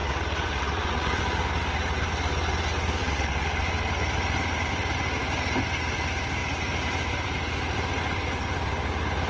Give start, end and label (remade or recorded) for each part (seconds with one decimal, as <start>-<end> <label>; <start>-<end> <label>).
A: 0.0-1.2 remade; 1.2-3.0 recorded; 3.0-3.6 remade; 3.6-9.3 recorded